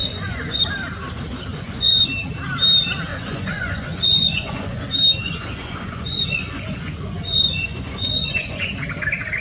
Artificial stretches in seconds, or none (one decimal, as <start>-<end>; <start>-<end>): 0.0-0.6; 1.5-2.0; 3.1-4.8; 5.2-8.7

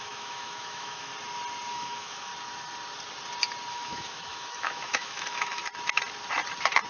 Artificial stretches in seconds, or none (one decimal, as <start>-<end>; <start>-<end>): 0.0-1.1; 1.7-2.3; 3.7-5.6